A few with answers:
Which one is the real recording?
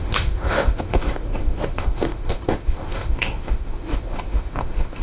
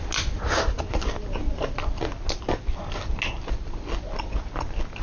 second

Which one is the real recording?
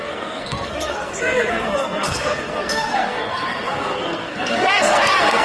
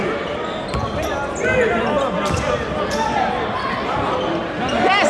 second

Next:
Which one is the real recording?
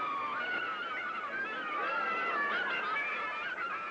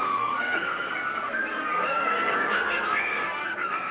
first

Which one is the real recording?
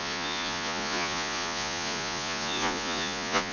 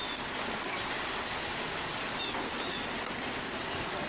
second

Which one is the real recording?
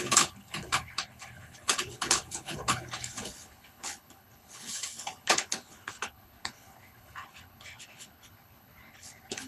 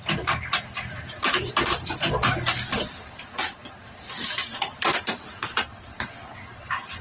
second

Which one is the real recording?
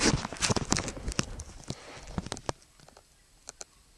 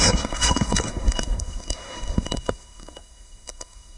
first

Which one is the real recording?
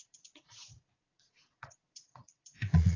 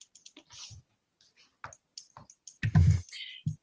second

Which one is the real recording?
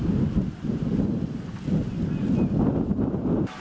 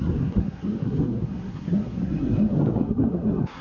first